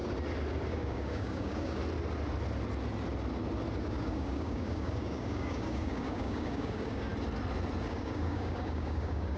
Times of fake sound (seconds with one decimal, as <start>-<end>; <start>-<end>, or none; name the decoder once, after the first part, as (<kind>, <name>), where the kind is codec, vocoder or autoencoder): 0.7-1.8 (codec, DAC); 3.8-7.1; 7.9-9.4